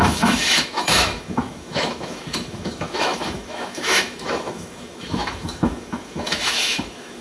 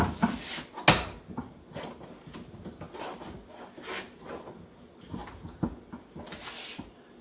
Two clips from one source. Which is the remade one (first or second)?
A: first